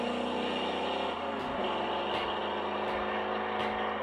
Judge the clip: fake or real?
real